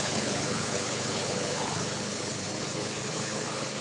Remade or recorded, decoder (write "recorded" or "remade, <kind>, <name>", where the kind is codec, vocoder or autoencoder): remade, codec, HILCodec